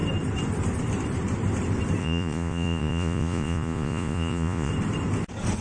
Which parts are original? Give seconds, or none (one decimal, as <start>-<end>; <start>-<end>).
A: 0.0-2.0; 4.7-5.6